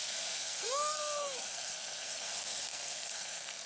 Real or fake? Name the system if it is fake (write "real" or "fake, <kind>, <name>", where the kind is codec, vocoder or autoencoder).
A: fake, codec, SNAC